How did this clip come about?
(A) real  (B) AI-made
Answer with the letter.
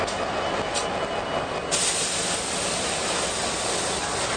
A